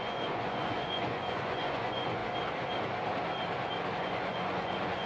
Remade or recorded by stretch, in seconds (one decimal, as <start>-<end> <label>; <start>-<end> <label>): 0.0-2.2 remade; 2.2-4.0 recorded; 4.0-5.1 remade